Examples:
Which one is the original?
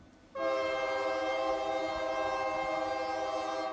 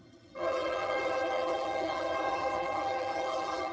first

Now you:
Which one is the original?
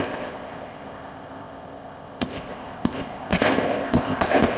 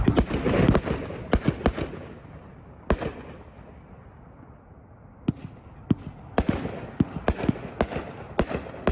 second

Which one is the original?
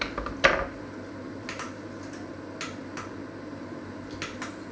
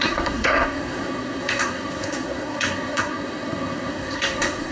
first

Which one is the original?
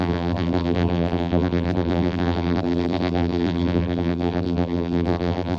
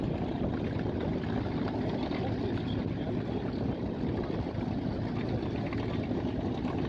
second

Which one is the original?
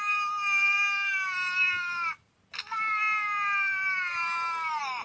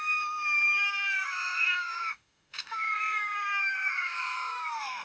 first